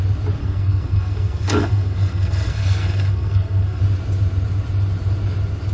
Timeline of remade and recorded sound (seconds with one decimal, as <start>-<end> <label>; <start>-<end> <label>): 0.0-0.4 recorded; 0.4-3.8 remade; 3.8-5.7 recorded